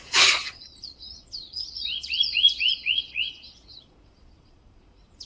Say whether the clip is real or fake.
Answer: fake